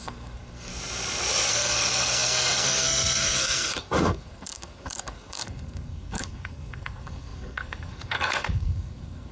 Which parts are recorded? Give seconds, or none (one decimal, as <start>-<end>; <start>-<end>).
0.7-1.5

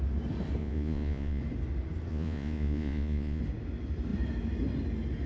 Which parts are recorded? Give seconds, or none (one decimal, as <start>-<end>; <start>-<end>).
0.0-0.6; 1.4-2.1; 3.4-5.3

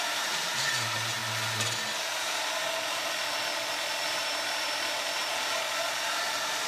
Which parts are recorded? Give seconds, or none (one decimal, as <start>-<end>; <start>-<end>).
1.2-3.9; 5.2-6.7

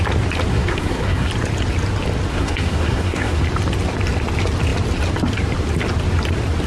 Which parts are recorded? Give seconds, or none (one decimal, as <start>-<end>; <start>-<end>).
0.0-0.5; 1.3-2.3; 3.4-6.7

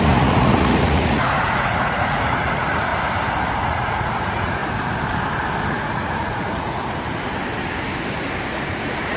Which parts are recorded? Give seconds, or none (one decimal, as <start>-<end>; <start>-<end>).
2.9-3.5; 4.6-5.7; 6.8-8.7

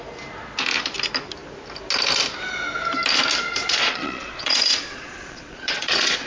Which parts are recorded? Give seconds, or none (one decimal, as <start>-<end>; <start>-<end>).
0.0-3.6

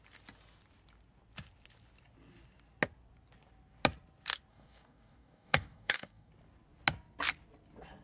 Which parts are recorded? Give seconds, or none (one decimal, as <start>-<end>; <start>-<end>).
0.0-4.5; 6.3-8.0